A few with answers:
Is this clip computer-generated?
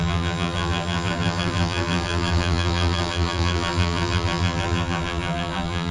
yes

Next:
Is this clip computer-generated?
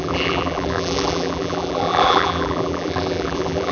yes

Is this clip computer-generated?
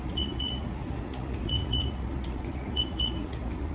yes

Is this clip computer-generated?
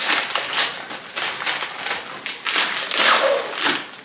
no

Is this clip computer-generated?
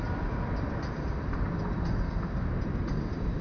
no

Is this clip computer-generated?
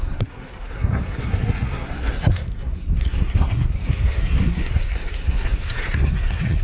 yes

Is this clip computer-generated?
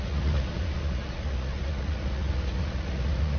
yes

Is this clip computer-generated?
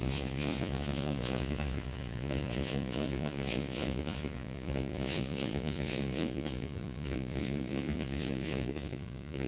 yes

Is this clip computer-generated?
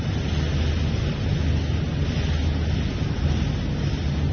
no